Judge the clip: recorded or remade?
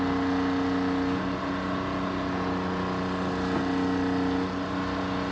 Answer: recorded